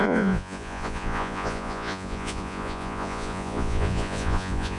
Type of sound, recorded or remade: remade